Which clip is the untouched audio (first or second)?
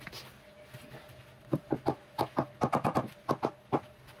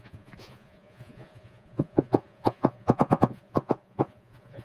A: first